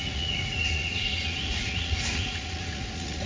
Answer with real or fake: fake